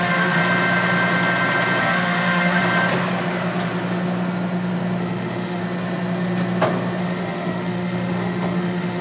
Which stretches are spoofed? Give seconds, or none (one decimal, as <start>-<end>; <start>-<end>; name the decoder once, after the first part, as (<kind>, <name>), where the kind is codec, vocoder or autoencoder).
0.0-0.4 (autoencoder, DAC-VAE); 1.8-2.6; 5.0-5.6; 7.0-9.0